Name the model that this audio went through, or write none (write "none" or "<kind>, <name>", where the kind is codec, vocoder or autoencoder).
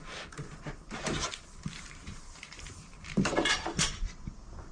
vocoder, BigVGAN v2